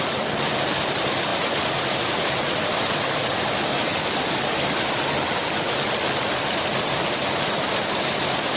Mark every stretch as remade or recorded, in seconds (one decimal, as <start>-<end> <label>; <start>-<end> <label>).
0.0-8.6 recorded